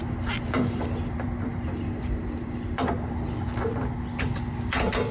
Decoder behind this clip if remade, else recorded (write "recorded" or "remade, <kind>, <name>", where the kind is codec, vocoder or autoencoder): recorded